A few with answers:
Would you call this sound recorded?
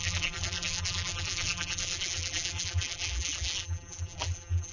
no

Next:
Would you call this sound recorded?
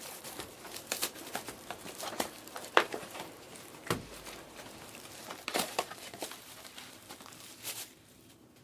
no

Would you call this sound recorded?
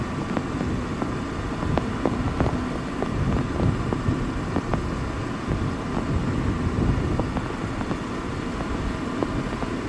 yes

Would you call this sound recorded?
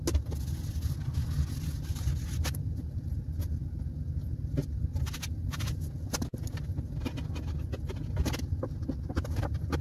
yes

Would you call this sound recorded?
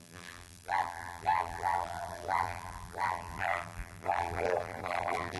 no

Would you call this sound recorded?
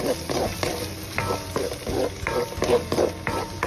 yes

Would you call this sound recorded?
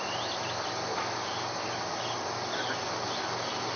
yes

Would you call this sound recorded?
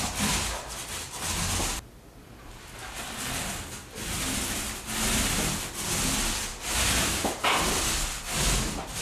yes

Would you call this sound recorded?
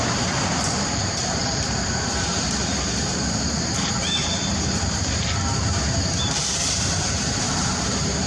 no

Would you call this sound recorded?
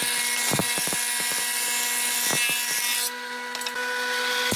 yes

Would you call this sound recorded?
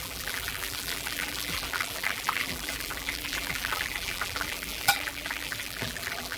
no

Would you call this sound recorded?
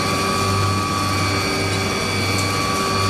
yes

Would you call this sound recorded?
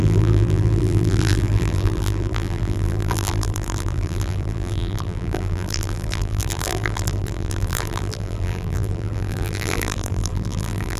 no